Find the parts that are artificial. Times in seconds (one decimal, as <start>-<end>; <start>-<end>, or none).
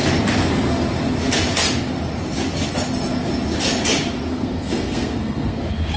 4.3-5.6